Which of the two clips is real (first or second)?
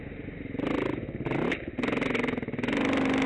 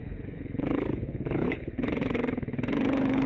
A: first